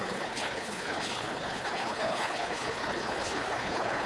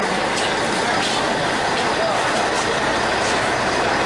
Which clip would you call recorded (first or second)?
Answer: second